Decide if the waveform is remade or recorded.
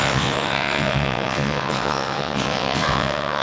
remade